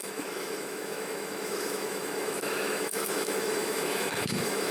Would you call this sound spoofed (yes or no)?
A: yes